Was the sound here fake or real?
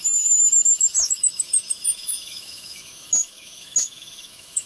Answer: fake